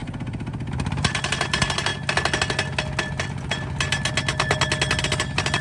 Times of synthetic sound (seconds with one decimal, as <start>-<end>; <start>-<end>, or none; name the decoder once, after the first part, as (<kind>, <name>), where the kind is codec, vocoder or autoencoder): 0.9-1.9 (vocoder, BigVGAN v2); 5.0-5.6